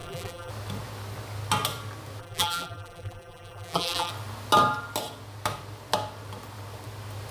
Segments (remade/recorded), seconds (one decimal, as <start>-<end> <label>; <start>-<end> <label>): 0.0-0.5 remade; 0.5-2.2 recorded; 2.2-4.1 remade; 4.1-7.3 recorded